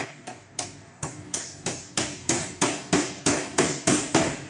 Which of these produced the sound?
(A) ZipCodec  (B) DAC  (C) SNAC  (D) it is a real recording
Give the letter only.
B